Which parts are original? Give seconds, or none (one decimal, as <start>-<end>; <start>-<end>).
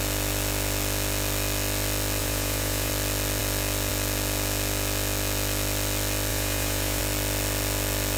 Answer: 0.0-2.2; 2.9-6.3; 7.0-8.2